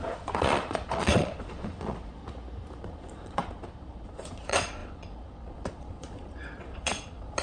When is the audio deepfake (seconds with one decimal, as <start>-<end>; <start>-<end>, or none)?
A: 0.0-2.2; 2.8-7.4